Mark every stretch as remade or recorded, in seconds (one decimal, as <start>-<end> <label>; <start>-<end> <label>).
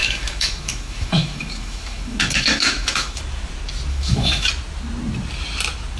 0.0-3.2 remade; 3.2-3.9 recorded; 3.9-4.5 remade; 4.5-6.0 recorded